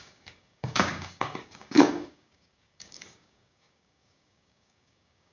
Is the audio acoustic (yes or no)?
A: no